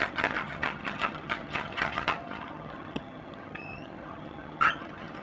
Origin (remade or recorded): remade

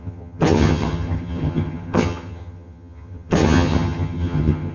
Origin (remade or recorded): remade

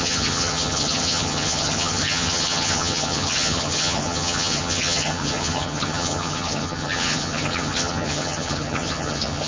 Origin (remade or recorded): remade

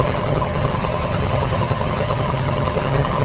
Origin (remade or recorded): remade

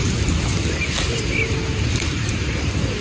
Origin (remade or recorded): recorded